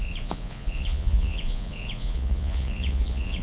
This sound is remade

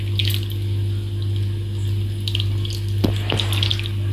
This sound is recorded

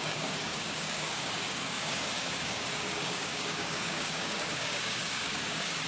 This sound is remade